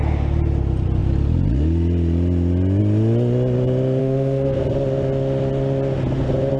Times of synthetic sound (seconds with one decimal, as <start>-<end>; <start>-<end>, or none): 4.0-4.6